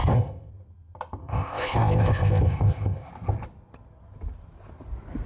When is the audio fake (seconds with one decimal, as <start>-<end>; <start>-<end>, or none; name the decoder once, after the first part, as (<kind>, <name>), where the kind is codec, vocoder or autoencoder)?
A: 0.0-0.5 (codec, ZipCodec); 1.2-3.1